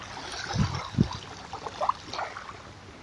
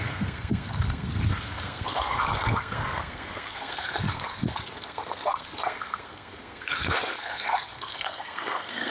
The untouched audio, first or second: first